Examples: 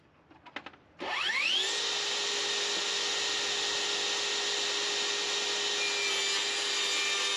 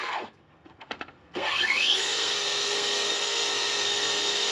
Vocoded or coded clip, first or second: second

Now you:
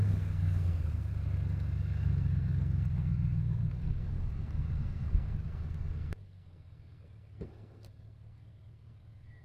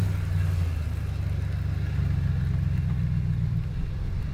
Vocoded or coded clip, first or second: first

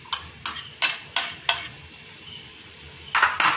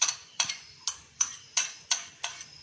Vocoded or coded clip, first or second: second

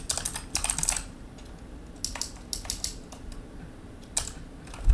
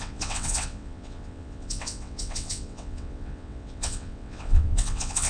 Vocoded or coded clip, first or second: second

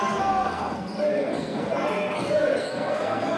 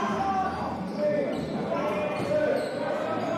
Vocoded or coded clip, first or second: first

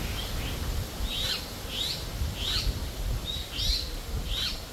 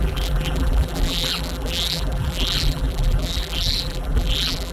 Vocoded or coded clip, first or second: second